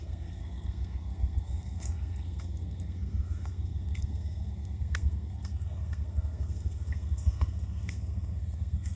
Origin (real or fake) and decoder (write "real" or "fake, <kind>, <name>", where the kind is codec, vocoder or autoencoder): fake, codec, SNAC